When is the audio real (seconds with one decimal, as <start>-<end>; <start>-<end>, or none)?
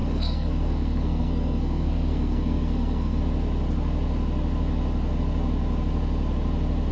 3.2-6.9